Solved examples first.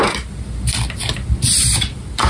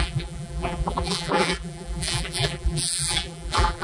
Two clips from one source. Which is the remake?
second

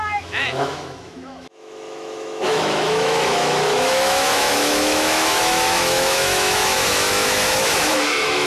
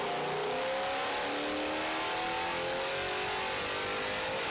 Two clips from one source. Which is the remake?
first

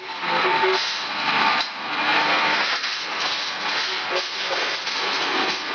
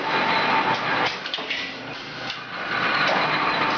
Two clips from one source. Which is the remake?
first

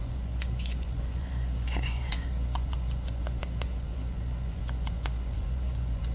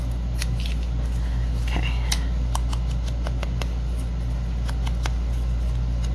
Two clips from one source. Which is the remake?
first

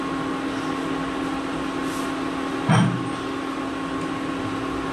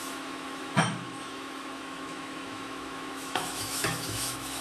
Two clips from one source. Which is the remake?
second